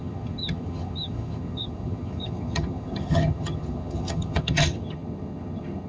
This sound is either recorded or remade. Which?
remade